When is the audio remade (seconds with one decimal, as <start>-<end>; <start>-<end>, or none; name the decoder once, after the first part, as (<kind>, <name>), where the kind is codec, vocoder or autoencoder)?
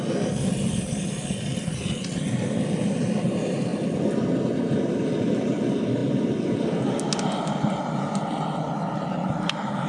none